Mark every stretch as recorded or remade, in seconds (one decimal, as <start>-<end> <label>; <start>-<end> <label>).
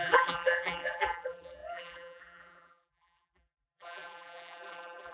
0.0-5.1 remade